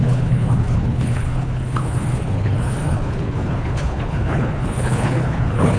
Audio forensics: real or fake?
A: fake